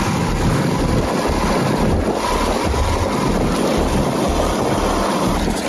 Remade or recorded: recorded